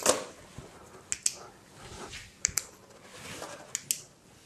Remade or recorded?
recorded